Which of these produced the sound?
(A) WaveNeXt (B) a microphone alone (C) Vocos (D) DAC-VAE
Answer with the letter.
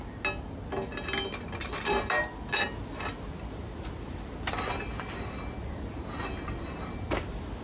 B